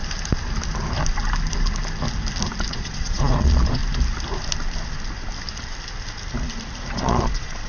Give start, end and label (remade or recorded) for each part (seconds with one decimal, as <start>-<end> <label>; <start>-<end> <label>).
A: 0.0-2.7 recorded; 2.7-3.8 remade; 3.8-6.9 recorded; 6.9-7.7 remade